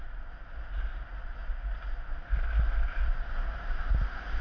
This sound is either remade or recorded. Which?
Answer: recorded